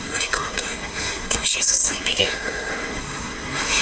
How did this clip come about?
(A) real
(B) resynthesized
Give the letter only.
B